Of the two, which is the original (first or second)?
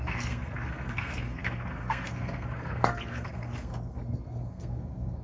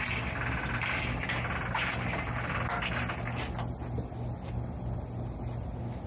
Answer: second